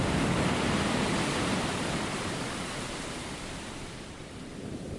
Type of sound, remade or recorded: remade